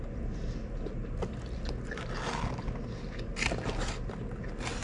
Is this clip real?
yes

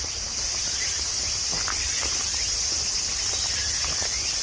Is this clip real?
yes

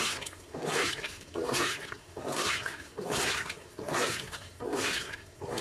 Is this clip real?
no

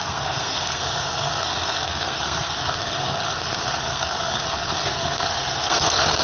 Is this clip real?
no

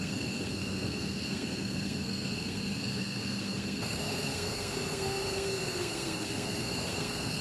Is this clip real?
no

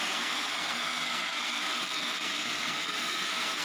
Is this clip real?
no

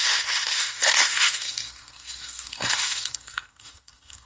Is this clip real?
no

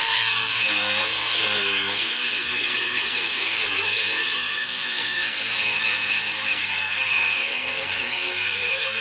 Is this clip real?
no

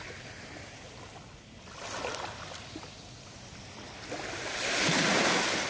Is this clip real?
yes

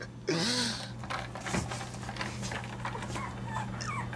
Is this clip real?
yes